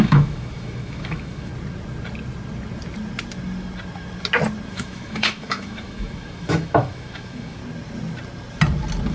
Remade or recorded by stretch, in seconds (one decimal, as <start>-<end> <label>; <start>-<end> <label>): 0.0-1.5 remade; 1.5-4.7 recorded; 4.7-7.6 remade; 7.6-9.1 recorded